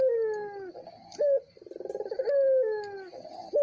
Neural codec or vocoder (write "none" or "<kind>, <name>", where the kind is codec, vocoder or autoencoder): none